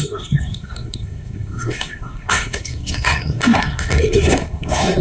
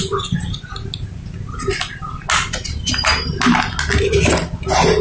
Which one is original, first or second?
second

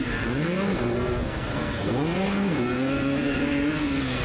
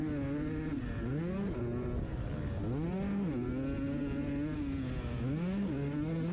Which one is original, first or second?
second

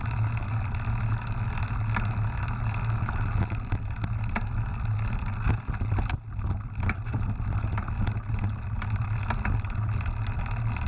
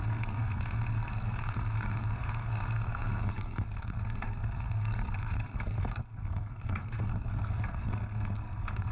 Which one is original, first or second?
first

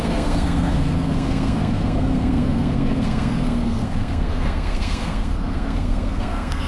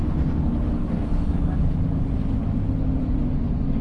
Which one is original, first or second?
second